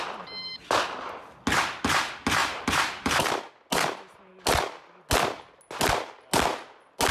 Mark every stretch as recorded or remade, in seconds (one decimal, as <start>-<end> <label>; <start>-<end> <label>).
0.0-2.4 recorded; 2.4-3.3 remade; 3.3-7.1 recorded